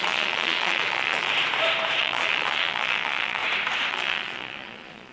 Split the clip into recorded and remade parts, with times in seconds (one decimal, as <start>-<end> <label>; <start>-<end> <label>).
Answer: 0.0-1.3 remade; 1.3-2.0 recorded; 2.0-3.4 remade; 3.4-3.9 recorded; 3.9-5.1 remade